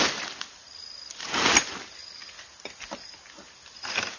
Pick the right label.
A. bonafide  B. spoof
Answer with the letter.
A